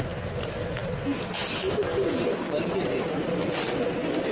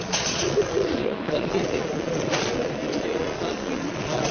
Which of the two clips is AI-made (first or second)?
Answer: second